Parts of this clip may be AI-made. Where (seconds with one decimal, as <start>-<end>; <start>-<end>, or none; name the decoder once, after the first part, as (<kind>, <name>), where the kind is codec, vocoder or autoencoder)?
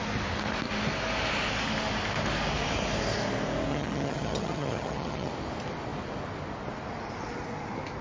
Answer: 3.7-5.3 (vocoder, HiFi-GAN)